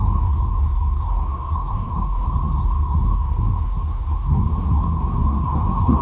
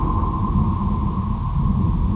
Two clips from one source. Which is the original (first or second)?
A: second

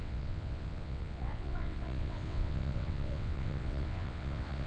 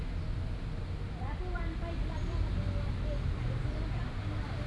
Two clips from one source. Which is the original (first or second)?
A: second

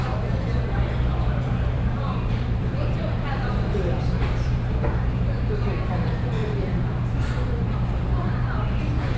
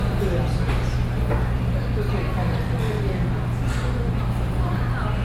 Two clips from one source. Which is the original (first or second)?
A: second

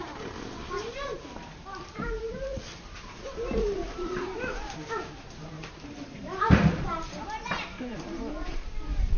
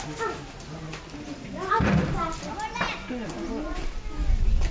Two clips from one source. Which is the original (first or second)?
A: second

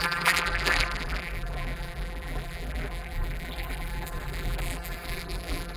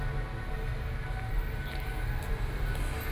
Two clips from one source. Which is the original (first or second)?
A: second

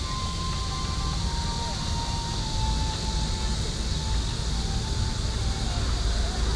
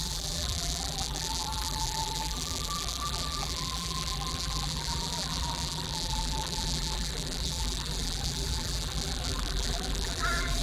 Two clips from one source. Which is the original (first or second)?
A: first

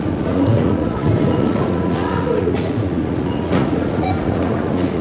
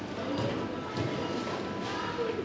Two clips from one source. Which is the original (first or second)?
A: second